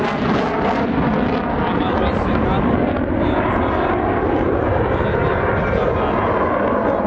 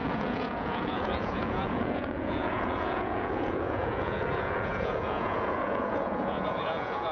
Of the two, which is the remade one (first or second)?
second